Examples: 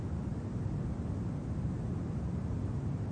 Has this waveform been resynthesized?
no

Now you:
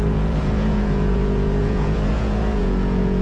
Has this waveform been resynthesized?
yes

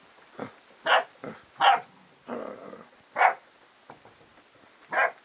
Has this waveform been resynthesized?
no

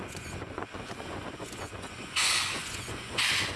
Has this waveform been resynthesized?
yes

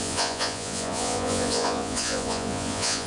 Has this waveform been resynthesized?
yes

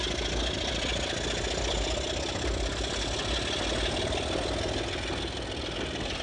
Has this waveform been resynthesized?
no